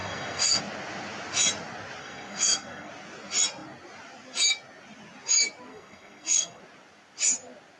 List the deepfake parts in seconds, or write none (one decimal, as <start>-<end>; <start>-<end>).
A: 0.0-0.6; 2.0-2.9; 5.7-6.6